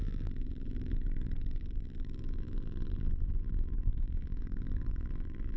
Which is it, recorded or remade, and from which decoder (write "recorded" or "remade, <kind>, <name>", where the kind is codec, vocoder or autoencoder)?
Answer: remade, vocoder, BigVGAN v2